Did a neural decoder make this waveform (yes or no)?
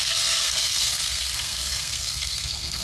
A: yes